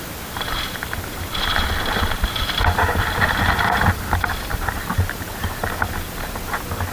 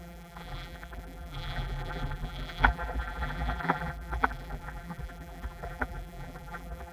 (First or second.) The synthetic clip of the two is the second